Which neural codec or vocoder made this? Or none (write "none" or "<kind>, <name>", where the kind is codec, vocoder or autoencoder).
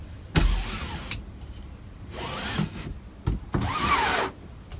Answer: none